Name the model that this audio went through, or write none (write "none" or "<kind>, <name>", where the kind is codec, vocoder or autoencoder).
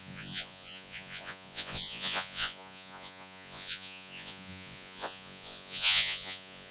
vocoder, Vocos